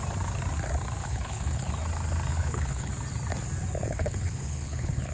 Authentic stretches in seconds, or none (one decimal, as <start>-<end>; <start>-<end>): 0.0-1.0; 1.7-2.3; 2.9-3.8